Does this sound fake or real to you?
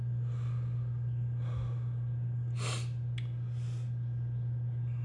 real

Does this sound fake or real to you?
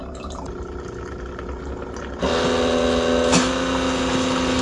real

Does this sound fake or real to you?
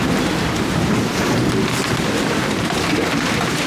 real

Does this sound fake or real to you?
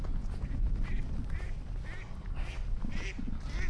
real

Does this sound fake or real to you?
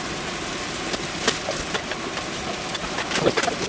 real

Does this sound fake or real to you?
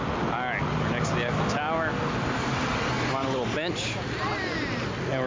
real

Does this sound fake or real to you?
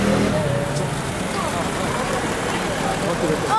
real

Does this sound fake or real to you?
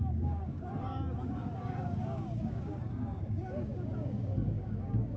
fake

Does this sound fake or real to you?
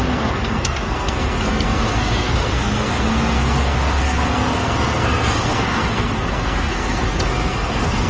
fake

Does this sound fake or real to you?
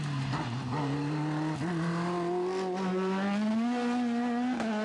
real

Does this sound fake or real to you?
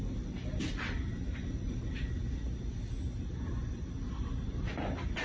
real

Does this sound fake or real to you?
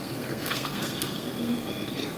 fake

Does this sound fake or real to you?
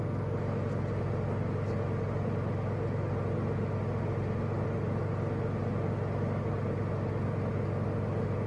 real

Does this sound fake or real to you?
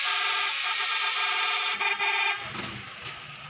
real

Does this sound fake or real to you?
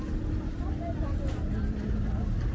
real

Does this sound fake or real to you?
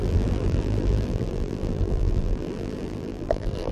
fake